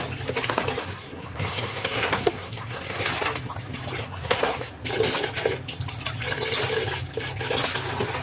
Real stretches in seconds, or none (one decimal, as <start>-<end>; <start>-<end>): 0.0-0.8; 3.1-4.0; 4.7-8.2